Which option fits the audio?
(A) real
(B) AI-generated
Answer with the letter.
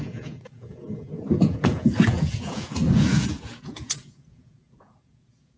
B